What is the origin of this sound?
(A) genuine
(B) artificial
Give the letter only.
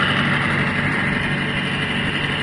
A